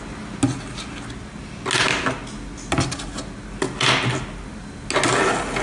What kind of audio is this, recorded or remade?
recorded